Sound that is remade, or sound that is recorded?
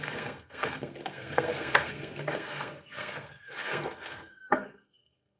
remade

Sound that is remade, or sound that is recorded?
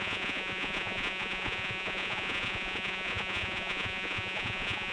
remade